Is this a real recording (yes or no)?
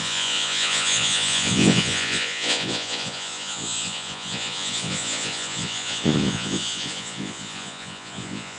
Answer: no